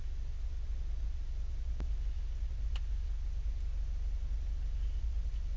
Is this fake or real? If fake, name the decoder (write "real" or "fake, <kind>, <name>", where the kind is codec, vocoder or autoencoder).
real